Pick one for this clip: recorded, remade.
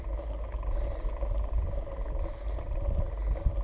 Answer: recorded